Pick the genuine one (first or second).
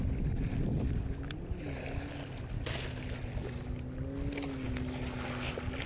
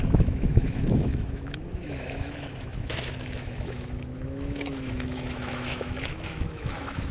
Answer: first